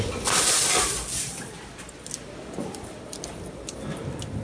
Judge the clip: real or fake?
real